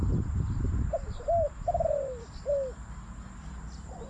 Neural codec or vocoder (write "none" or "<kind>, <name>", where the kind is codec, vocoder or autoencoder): none